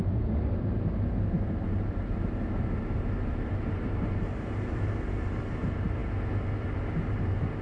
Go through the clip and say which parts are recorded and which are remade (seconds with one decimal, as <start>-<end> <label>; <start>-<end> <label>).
0.0-6.0 remade; 6.0-6.8 recorded; 6.8-7.6 remade